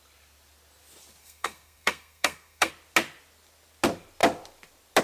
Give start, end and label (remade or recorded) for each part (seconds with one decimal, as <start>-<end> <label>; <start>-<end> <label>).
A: 0.0-1.2 recorded; 1.2-2.7 remade; 2.7-5.0 recorded